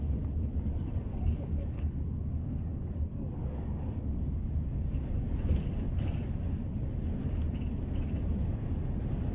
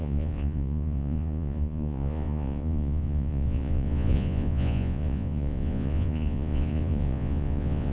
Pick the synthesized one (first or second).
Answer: second